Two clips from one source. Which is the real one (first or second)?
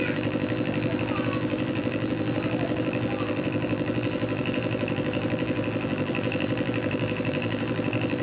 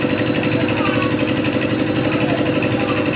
second